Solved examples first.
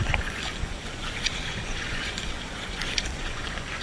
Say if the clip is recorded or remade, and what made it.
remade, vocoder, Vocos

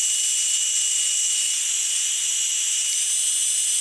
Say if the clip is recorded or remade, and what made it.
recorded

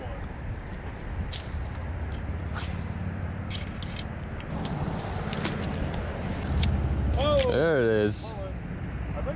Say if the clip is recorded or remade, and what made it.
recorded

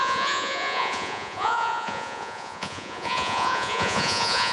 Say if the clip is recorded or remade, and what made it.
remade, vocoder, Vocos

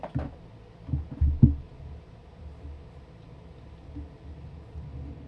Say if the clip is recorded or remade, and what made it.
recorded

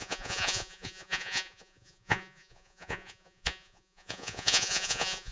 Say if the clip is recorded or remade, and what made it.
remade, vocoder, Vocos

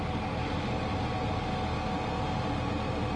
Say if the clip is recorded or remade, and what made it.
recorded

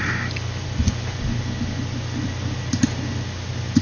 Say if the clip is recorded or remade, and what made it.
recorded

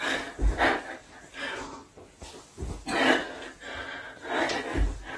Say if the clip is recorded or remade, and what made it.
recorded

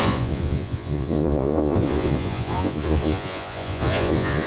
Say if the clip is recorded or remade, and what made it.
remade, vocoder, Vocos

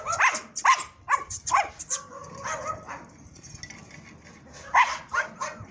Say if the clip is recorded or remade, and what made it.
recorded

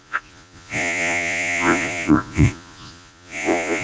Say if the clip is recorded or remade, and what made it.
remade, vocoder, Vocos